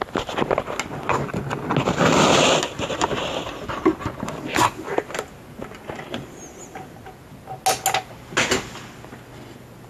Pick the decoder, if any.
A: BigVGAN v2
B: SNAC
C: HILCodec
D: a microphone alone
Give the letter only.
D